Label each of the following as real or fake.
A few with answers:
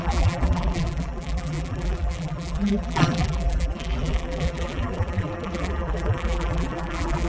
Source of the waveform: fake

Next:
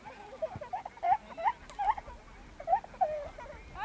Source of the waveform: real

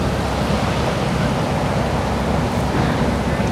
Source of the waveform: real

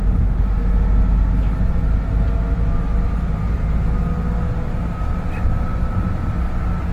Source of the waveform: real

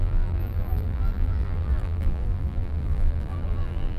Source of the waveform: fake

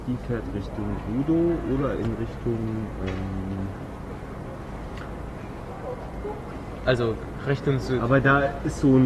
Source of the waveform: real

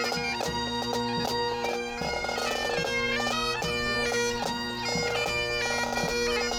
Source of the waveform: real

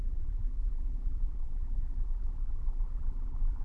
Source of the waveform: fake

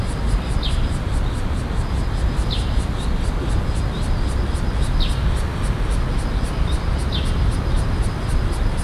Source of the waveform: real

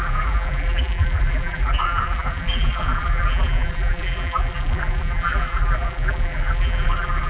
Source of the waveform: fake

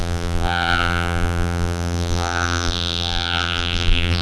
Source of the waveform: fake